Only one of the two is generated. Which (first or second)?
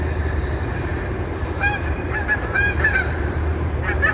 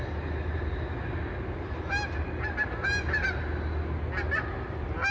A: first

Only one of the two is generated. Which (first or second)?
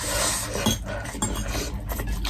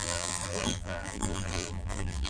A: second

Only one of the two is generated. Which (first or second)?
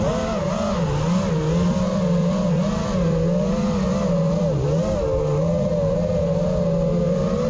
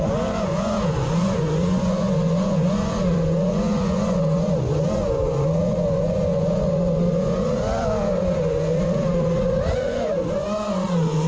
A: second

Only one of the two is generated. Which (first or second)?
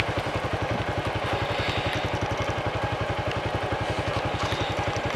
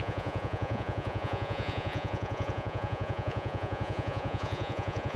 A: second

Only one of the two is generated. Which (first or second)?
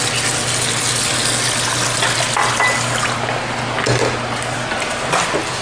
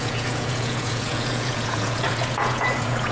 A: second